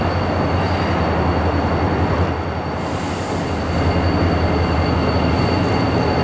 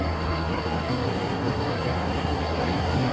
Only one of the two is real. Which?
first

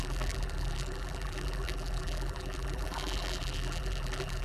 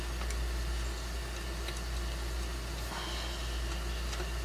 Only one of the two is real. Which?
second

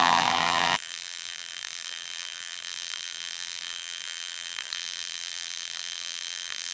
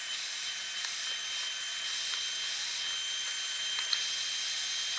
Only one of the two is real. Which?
second